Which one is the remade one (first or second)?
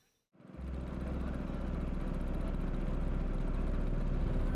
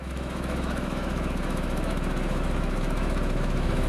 second